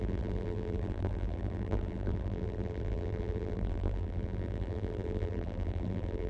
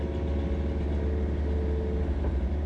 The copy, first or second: first